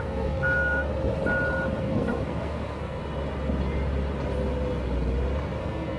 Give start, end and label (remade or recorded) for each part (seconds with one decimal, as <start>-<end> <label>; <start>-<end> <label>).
0.0-0.9 remade; 0.9-1.8 recorded; 1.8-3.0 remade; 3.0-5.6 recorded; 5.6-6.0 remade